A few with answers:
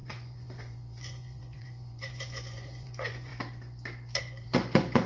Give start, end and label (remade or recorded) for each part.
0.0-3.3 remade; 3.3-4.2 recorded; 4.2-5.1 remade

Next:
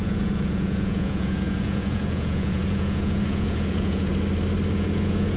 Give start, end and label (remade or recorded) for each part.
0.0-4.1 remade; 4.1-4.7 recorded; 4.7-5.4 remade

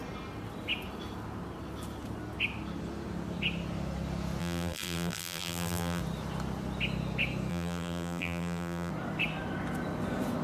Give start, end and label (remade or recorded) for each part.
0.0-4.4 recorded; 4.4-6.0 remade; 6.0-7.5 recorded; 7.5-8.9 remade; 8.9-10.4 recorded

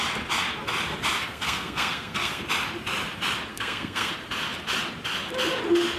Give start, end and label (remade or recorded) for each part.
0.0-1.2 recorded; 1.2-2.4 remade; 2.4-3.5 recorded; 3.5-4.1 remade; 4.1-6.0 recorded

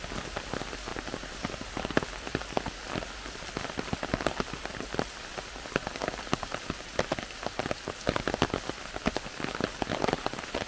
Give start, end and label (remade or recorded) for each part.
0.0-10.7 recorded

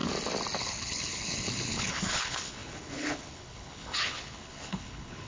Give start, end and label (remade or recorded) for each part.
0.0-0.6 recorded; 0.6-5.3 remade